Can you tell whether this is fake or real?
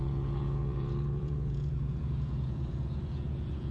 fake